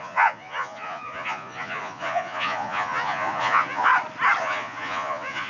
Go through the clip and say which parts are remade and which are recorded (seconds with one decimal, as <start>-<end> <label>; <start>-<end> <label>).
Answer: 0.0-3.9 remade; 3.9-4.4 recorded; 4.4-5.5 remade